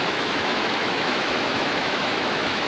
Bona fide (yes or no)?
no